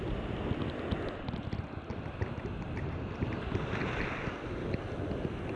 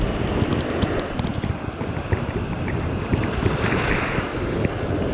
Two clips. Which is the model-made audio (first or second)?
second